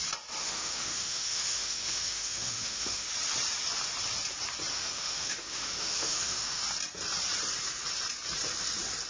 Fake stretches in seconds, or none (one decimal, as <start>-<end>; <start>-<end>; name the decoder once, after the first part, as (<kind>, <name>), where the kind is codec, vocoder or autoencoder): 0.4-3.1 (autoencoder, DAC-VAE); 4.7-6.6